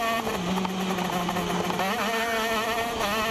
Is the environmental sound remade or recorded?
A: recorded